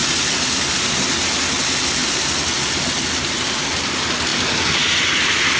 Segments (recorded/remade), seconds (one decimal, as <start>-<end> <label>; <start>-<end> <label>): 0.0-5.6 recorded